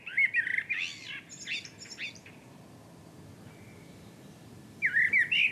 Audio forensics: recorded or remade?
recorded